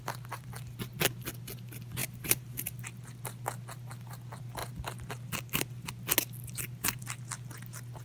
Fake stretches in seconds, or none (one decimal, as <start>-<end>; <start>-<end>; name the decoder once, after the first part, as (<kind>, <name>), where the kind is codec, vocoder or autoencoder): 2.0-2.8 (vocoder, BigVGAN v2)